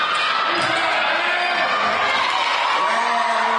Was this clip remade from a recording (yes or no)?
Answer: no